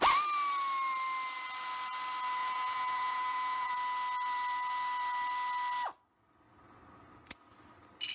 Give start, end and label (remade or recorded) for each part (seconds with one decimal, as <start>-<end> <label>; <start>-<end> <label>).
0.0-2.4 recorded; 2.4-3.7 remade; 3.7-8.1 recorded